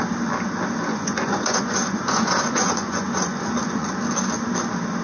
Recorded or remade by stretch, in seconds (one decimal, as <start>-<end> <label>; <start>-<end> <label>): 0.0-0.9 recorded; 0.9-3.9 remade; 3.9-5.0 recorded